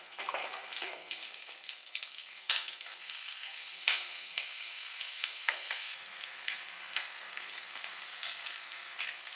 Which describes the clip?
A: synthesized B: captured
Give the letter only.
A